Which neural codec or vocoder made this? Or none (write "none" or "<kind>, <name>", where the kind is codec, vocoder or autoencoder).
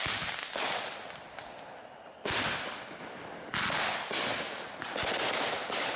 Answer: none